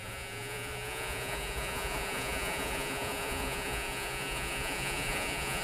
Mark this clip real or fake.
fake